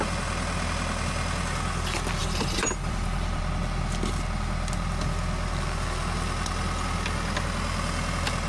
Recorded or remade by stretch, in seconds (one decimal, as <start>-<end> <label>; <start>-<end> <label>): 0.0-2.2 recorded; 2.2-3.4 remade; 3.4-8.5 recorded